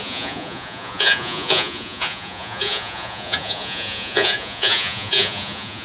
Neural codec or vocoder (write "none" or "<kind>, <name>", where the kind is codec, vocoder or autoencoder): vocoder, Vocos